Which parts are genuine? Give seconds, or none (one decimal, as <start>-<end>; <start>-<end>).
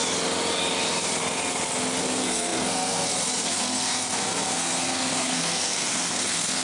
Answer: 0.0-2.0